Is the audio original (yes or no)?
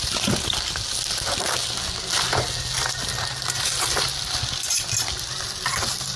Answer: yes